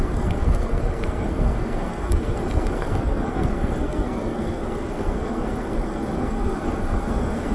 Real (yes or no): no